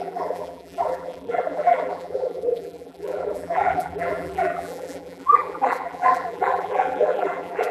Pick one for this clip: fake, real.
fake